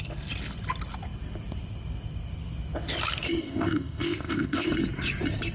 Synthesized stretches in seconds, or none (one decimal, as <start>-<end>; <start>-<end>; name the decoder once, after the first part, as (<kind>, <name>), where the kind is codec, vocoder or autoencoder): 3.4-4.7 (codec, ZipCodec)